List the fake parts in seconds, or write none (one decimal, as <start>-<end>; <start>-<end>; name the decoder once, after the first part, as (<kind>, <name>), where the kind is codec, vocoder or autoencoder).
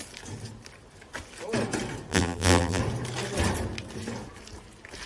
2.1-2.8 (vocoder, BigVGAN v2)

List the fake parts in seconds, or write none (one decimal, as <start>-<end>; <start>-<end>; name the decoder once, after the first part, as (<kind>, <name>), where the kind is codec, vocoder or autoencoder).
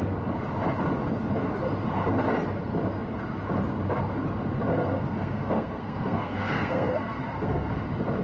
4.7-7.7 (codec, SNAC)